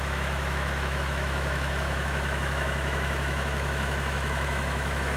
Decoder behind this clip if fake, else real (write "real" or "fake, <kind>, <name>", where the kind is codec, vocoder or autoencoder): fake, autoencoder, DAC-VAE